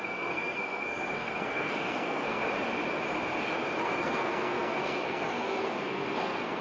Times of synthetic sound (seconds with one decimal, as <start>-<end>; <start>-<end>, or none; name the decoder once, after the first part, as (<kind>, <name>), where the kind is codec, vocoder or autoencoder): 0.0-2.4 (codec, SNAC); 3.8-6.6